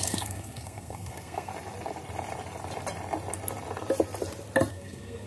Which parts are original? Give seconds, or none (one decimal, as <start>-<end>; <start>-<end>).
1.5-4.7